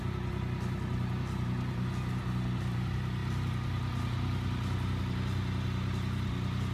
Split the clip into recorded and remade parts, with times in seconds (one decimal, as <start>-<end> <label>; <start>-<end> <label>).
0.0-6.7 recorded